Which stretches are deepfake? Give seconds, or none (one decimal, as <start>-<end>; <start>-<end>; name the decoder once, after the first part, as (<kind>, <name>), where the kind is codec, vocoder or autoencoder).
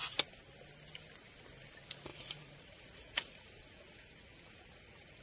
2.1-5.2 (vocoder, Vocos)